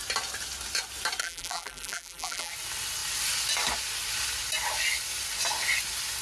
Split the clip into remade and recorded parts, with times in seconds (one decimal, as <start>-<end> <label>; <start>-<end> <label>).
0.0-1.2 recorded; 1.2-2.5 remade; 2.5-6.2 recorded